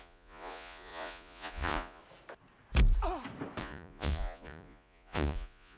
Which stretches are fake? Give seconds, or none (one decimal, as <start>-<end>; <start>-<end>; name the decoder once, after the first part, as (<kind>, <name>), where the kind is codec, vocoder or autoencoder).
0.0-2.0 (vocoder, Vocos); 3.6-5.8